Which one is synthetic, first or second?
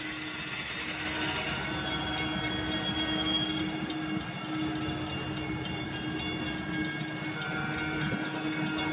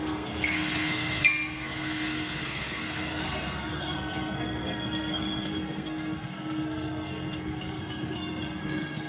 second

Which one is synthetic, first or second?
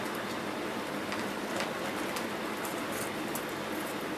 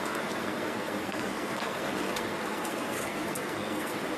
second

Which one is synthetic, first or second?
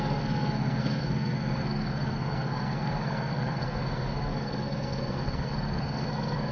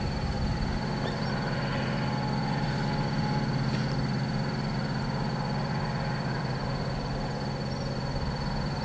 first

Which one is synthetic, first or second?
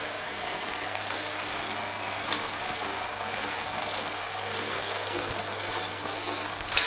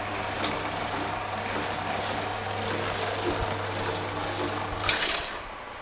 first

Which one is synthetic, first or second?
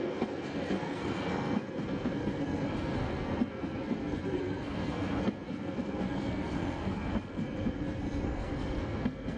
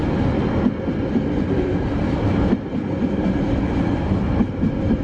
first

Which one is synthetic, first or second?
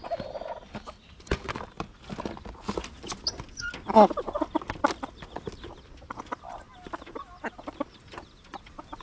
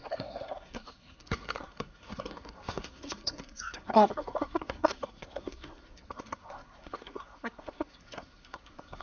second